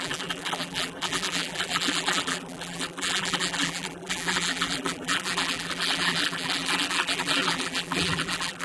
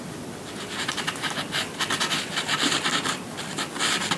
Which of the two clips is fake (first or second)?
first